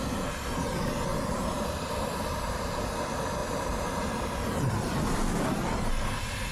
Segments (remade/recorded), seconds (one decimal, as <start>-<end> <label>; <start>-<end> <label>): 0.0-1.1 recorded; 1.1-2.8 remade; 2.8-3.4 recorded; 3.4-5.9 remade; 5.9-6.5 recorded